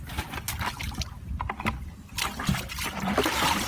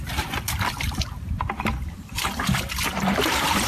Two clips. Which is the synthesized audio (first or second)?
second